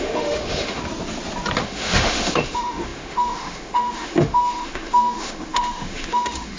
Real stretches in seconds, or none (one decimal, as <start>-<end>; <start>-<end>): 0.8-1.6